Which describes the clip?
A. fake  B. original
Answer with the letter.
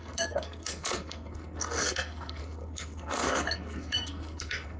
A